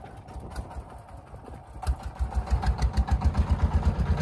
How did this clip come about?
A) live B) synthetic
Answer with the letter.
A